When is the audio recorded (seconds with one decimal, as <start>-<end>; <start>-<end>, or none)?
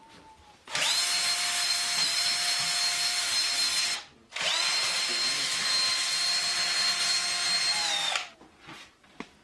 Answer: 0.0-9.4